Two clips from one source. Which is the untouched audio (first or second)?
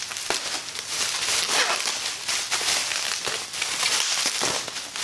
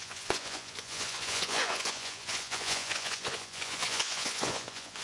first